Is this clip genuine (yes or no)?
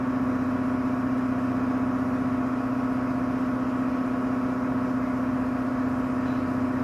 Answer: yes